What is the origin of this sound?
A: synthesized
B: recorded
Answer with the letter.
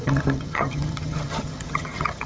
A